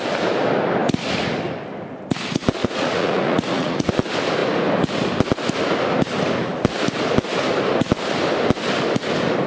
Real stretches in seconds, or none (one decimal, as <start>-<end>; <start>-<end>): 0.0-2.6; 3.9-9.5